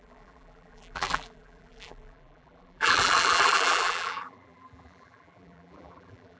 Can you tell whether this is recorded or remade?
remade